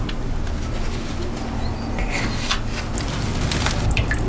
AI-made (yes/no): no